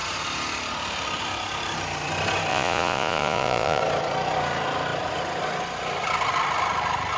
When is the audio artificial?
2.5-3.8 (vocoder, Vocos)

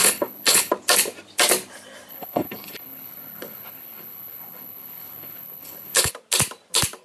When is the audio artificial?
0.0-0.7 (codec, HILCodec); 2.1-6.1